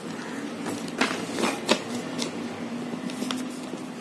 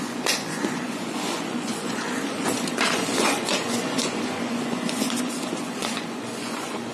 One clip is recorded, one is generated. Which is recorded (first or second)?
first